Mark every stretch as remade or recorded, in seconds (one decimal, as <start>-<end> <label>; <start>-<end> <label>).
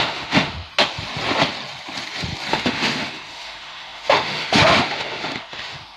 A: 0.0-0.7 remade; 0.7-2.5 recorded; 2.5-6.0 remade